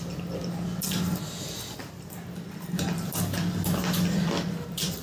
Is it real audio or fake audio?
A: real